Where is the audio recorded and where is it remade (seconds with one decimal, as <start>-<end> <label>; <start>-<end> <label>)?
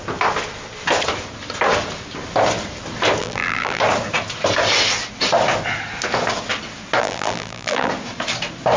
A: 0.0-3.2 recorded; 3.2-3.8 remade; 3.8-7.0 recorded; 7.0-7.9 remade; 7.9-8.8 recorded